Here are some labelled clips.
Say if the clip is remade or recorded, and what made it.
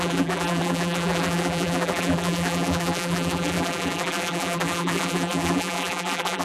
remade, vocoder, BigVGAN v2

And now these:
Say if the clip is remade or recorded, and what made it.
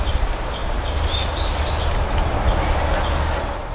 recorded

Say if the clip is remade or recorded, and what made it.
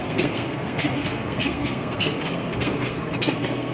remade, codec, SNAC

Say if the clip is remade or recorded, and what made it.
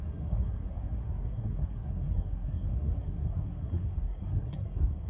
remade, codec, SNAC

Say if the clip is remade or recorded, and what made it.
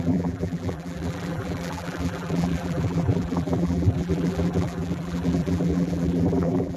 remade, vocoder, BigVGAN v2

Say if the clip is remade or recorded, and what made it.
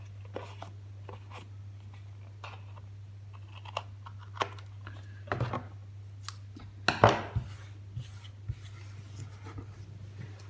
recorded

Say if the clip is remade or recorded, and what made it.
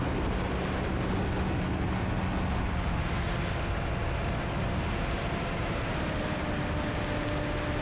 recorded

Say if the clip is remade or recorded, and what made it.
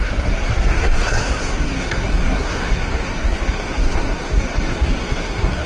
remade, codec, SNAC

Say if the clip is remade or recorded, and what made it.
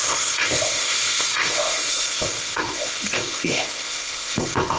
remade, codec, ZipCodec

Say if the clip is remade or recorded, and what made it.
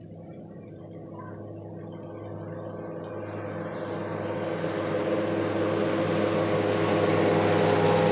recorded